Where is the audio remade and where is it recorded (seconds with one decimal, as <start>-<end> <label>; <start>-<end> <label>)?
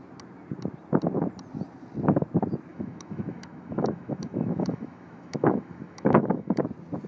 0.0-2.7 recorded; 2.7-6.6 remade; 6.6-7.1 recorded